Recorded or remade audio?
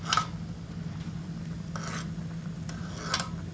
recorded